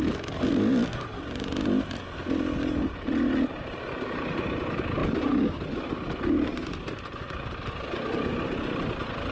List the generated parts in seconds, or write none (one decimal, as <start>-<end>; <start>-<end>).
none